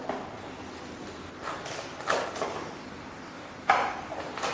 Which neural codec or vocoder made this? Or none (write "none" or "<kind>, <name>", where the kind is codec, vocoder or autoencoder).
none